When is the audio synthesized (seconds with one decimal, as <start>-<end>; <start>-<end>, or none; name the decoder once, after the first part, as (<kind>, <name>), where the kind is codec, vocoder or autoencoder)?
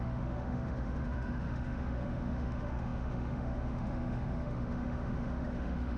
0.0-6.0 (autoencoder, DAC-VAE)